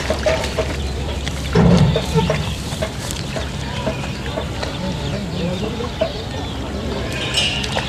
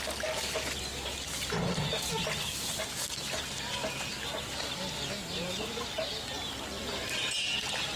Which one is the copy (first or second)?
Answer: first